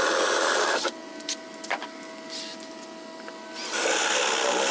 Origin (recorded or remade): recorded